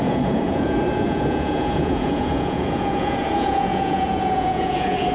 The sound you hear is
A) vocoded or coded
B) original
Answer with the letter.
A